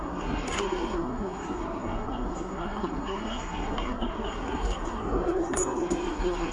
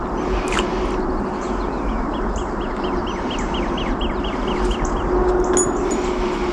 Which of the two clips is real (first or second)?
second